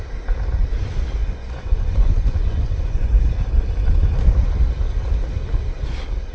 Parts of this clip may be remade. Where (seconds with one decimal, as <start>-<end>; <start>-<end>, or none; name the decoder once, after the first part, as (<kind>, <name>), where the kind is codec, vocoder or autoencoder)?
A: 1.2-3.1 (vocoder, Vocos)